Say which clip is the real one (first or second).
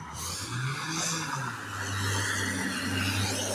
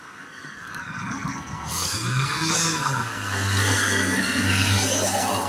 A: first